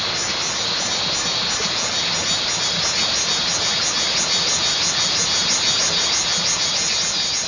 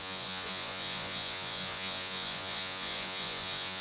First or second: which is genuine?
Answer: first